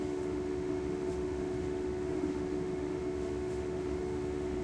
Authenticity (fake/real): fake